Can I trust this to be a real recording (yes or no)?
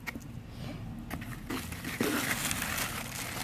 yes